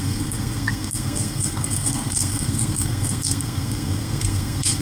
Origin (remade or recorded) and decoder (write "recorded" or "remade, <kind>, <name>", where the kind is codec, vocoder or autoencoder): remade, codec, SNAC